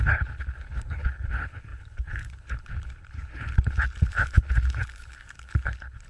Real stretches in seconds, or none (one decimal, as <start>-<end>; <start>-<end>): none